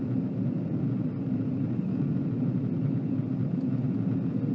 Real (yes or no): yes